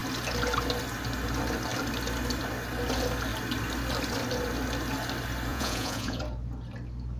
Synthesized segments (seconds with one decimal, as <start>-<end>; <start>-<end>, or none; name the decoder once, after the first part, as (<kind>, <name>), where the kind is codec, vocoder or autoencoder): 5.5-6.2 (vocoder, Vocos)